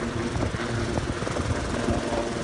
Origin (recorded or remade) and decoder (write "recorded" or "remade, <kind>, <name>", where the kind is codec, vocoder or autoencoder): recorded